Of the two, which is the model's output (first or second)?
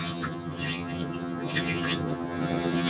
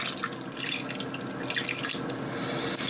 first